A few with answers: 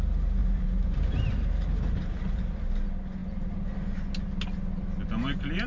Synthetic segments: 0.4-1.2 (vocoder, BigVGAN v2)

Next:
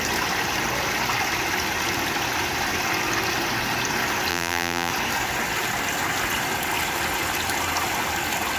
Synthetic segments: 4.3-4.9 (vocoder, BigVGAN v2)

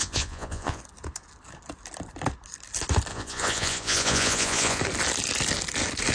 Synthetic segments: 0.0-0.8 (vocoder, Vocos); 3.1-4.8

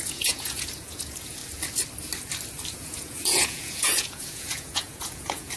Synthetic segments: 0.0-1.4 (vocoder, Vocos); 2.7-5.6

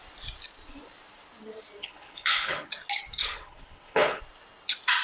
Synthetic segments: 1.8-2.7 (codec, HILCodec); 3.2-4.2

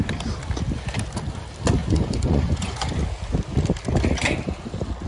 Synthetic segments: 1.8-3.0 (vocoder, Vocos)